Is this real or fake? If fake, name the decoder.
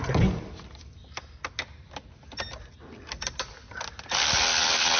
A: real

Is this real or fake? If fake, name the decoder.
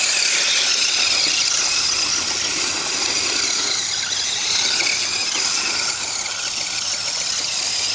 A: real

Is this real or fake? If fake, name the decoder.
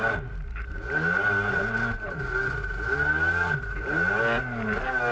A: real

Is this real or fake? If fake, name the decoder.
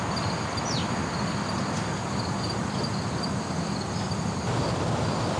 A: real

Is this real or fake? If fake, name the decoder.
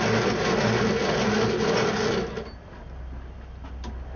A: real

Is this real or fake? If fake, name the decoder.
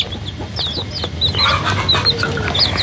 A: real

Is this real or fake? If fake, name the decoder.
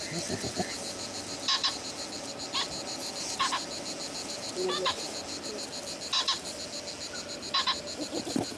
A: real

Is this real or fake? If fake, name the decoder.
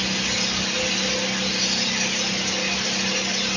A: real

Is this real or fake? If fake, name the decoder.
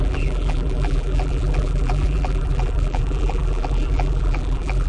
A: fake, vocoder, BigVGAN v2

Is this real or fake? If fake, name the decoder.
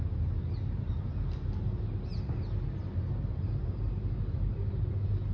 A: real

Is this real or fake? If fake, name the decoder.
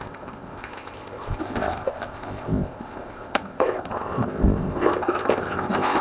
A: fake, codec, ZipCodec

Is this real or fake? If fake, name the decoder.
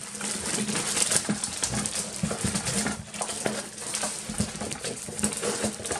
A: real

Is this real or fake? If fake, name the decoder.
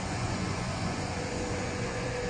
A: fake, vocoder, Vocos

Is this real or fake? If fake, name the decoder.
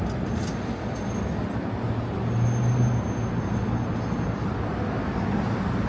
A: real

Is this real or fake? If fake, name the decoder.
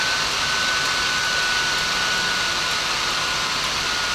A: real